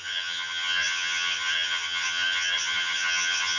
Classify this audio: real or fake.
fake